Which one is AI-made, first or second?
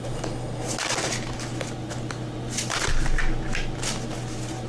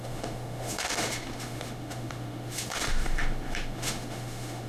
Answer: second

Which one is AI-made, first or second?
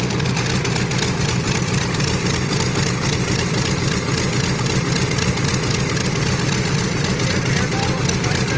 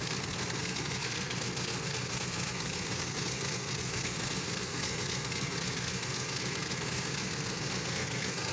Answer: second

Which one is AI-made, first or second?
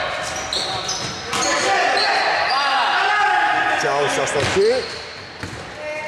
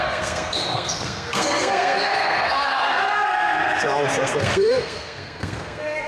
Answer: second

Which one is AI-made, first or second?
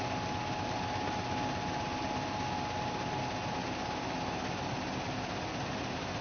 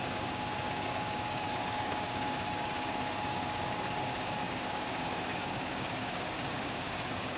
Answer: second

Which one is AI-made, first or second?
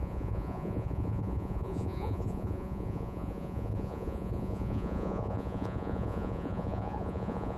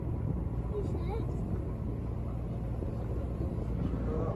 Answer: first